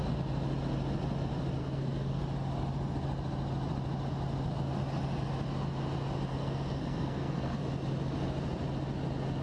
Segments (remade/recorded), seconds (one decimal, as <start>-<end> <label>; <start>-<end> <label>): 0.0-1.6 recorded; 1.6-2.2 remade; 2.2-6.3 recorded; 6.3-7.6 remade; 7.6-9.4 recorded